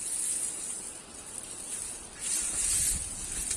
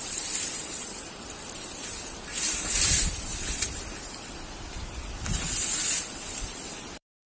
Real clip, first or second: first